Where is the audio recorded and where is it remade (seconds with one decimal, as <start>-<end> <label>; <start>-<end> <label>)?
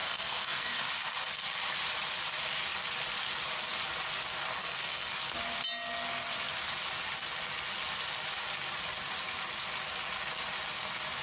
0.0-0.8 remade; 0.8-4.5 recorded; 4.5-5.1 remade; 5.1-11.2 recorded